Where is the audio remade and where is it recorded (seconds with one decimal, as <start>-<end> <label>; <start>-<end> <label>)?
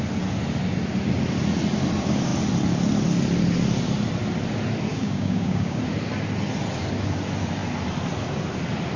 0.0-4.9 recorded; 4.9-5.8 remade; 5.8-9.0 recorded